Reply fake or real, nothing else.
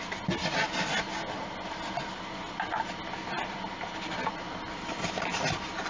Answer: real